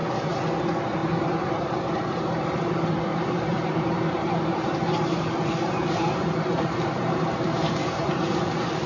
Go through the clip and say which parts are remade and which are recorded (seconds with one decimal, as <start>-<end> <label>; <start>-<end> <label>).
0.0-0.6 recorded; 0.6-8.9 remade